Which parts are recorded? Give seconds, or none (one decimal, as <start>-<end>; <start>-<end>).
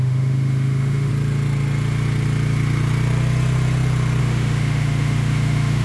1.1-4.2